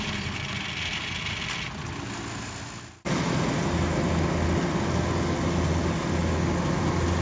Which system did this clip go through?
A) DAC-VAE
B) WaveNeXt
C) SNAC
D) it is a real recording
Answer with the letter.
D